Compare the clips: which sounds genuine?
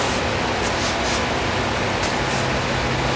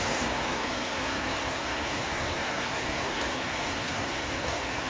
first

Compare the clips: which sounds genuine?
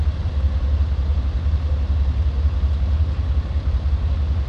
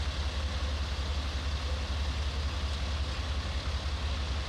second